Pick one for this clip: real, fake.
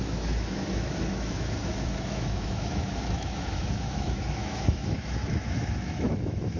fake